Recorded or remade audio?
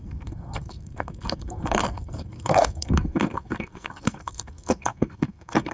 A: remade